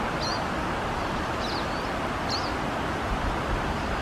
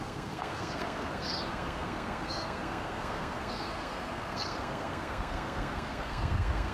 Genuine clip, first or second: first